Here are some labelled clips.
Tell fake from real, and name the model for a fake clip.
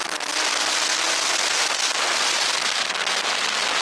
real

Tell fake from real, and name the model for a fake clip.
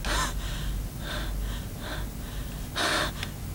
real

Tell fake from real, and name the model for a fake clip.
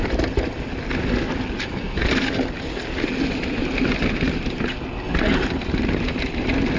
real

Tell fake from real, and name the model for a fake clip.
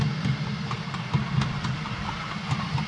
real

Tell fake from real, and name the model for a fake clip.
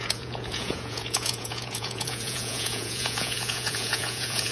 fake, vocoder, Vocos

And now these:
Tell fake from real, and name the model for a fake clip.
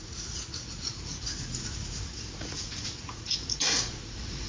fake, vocoder, Vocos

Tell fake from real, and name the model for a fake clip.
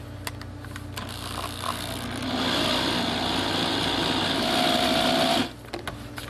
real